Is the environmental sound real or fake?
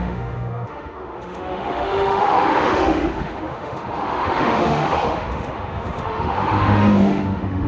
fake